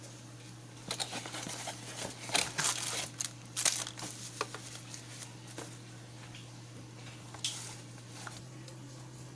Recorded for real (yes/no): yes